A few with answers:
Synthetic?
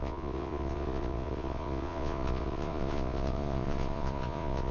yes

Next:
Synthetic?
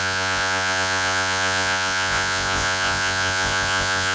yes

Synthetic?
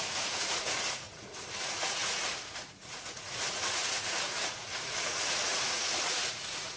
yes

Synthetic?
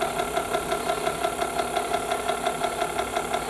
no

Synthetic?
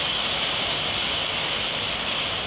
no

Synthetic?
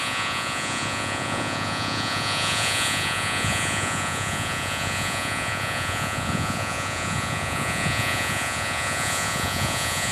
yes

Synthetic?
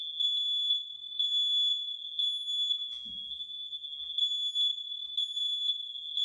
no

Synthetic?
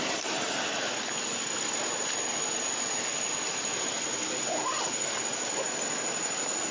no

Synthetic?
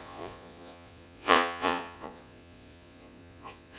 yes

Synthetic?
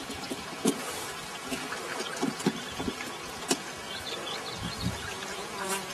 yes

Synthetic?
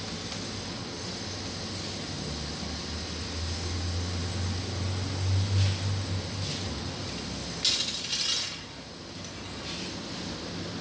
no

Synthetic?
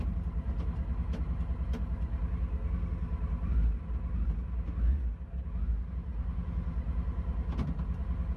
no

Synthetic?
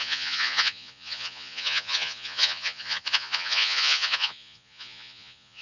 yes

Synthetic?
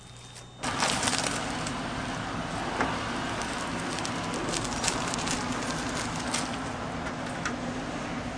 no